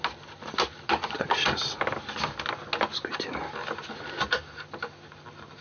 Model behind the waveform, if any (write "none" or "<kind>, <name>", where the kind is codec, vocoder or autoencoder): none